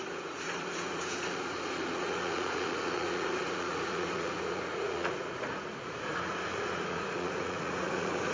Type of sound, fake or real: fake